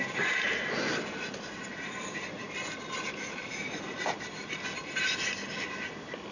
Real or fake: real